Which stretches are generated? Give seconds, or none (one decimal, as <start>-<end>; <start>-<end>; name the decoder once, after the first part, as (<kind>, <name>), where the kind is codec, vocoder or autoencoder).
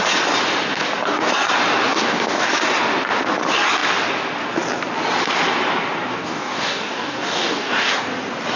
0.7-1.3 (codec, DAC); 1.9-2.5; 6.1-8.1